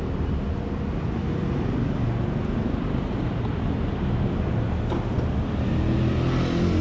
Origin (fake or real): real